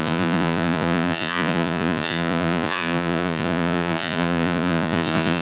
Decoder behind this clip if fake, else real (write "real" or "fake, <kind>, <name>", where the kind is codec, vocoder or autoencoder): fake, vocoder, Vocos